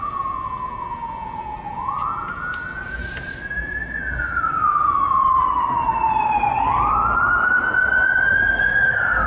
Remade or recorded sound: recorded